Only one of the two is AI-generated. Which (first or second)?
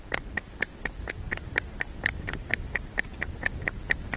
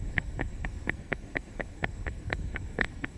second